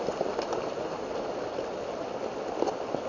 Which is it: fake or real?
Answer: real